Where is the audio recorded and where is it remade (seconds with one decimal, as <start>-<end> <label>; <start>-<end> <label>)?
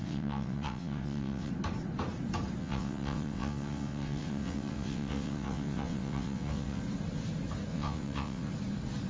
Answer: 0.0-1.5 remade; 1.5-2.6 recorded; 2.6-6.8 remade; 6.8-7.7 recorded; 7.7-8.5 remade; 8.5-9.1 recorded